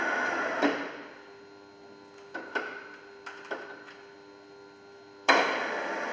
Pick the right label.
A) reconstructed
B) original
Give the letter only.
B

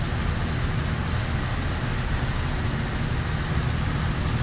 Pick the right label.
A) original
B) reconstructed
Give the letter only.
A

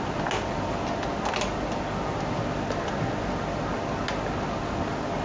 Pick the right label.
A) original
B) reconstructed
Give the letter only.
A